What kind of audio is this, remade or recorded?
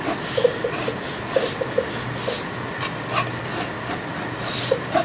recorded